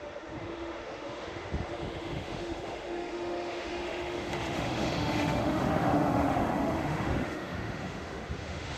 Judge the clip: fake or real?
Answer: fake